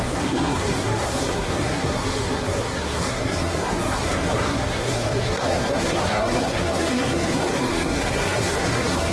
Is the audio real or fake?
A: fake